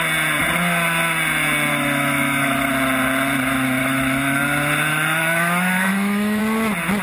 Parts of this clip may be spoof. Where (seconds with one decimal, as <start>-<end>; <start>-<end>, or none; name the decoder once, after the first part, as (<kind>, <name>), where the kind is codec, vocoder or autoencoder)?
1.7-2.7 (autoencoder, DAC-VAE); 3.8-4.4; 4.9-6.4